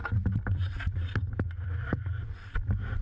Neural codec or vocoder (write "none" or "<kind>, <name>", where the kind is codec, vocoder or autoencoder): vocoder, BigVGAN v2